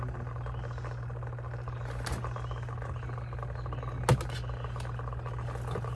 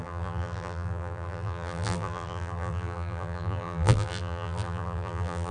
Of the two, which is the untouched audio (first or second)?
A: first